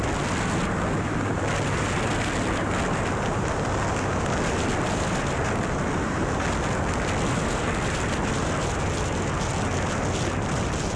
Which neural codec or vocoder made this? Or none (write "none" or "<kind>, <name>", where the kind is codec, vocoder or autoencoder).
none